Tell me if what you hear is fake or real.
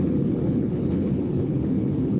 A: fake